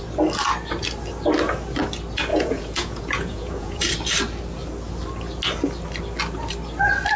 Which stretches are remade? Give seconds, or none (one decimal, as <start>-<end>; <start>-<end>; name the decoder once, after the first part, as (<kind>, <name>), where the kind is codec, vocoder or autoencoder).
2.3-3.8 (vocoder, Vocos)